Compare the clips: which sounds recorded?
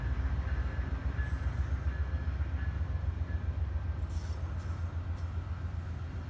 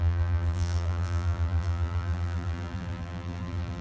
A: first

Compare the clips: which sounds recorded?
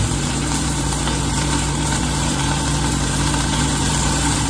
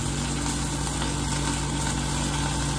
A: second